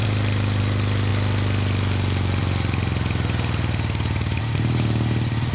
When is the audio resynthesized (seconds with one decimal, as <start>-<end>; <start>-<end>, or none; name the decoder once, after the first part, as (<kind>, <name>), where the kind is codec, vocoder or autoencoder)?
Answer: none